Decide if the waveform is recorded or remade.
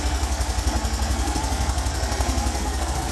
remade